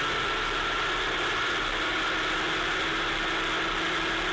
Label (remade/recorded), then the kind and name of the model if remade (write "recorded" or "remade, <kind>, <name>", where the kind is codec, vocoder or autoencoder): recorded